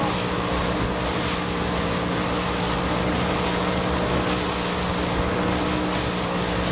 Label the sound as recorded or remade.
recorded